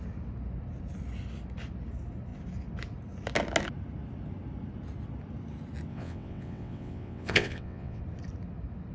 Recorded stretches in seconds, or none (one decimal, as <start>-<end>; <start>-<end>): 0.0-5.9; 8.0-8.9